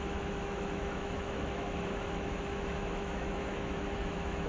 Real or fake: fake